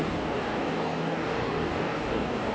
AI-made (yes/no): yes